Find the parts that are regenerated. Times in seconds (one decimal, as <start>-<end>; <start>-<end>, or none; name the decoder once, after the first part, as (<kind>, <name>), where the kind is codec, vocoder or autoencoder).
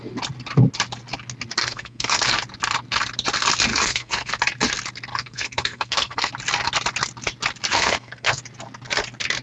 1.6-2.2 (codec, SNAC); 3.7-4.4; 5.1-6.3; 7.7-8.4